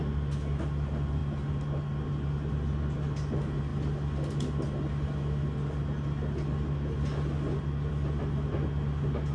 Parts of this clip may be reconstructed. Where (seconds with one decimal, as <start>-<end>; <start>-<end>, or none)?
none

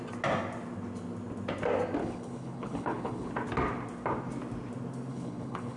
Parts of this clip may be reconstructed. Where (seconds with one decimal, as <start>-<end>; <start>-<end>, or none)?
2.0-3.3; 5.1-5.8

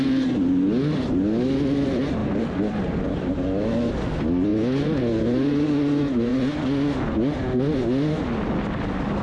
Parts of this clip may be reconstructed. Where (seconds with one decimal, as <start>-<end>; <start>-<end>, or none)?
none

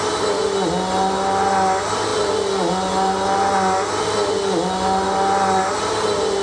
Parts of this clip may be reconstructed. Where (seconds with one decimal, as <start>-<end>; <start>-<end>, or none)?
none

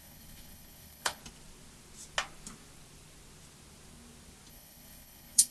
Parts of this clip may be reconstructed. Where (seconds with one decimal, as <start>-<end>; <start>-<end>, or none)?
0.0-1.2; 4.5-5.5

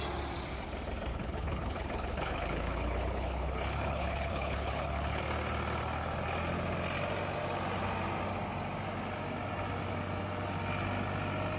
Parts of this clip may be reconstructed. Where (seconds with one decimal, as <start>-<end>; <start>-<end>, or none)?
1.1-5.2